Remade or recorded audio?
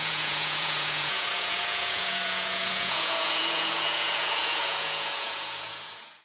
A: remade